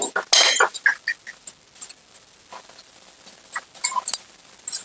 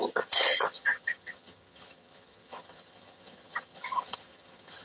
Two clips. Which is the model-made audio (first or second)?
second